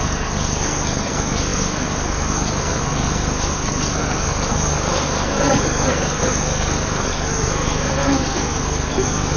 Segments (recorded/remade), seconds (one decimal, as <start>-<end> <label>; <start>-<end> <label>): 0.0-9.4 remade